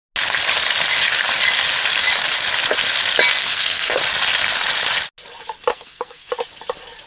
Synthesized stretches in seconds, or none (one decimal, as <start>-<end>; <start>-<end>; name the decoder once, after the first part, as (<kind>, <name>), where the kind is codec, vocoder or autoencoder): 3.4-4.0 (codec, SNAC); 5.7-6.3